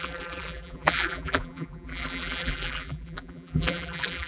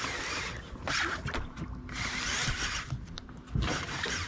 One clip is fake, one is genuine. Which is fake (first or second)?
first